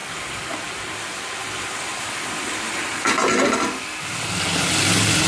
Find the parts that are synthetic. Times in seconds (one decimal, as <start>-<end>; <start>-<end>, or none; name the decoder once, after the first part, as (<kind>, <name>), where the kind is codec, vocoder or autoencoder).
none